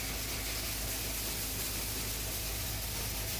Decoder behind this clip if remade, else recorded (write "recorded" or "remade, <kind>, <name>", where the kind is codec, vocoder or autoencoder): recorded